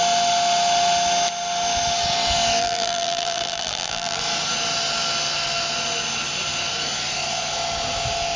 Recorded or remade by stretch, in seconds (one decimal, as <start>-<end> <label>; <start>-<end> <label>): 0.0-2.6 recorded; 2.6-4.2 remade; 4.2-8.4 recorded